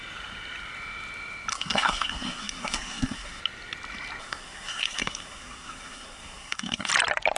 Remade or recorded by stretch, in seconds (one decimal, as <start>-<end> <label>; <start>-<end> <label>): 0.0-1.5 recorded; 1.5-3.4 remade; 3.4-4.2 recorded; 4.2-6.9 remade; 6.9-7.4 recorded